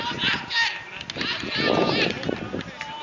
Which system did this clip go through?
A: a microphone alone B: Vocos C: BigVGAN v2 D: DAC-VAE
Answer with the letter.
A